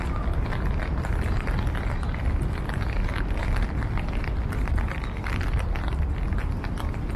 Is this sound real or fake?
real